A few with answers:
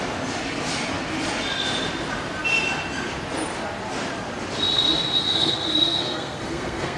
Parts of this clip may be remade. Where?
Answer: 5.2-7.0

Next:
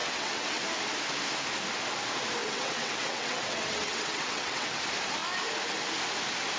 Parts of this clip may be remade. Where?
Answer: 0.0-0.6; 2.4-4.8

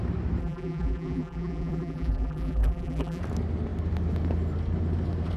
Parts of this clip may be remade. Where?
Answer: 0.4-3.2

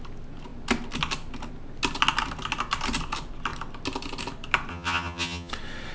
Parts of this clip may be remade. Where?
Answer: 4.7-5.5